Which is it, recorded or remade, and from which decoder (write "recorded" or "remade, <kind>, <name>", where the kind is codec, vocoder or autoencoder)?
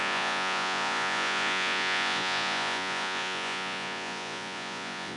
remade, vocoder, Vocos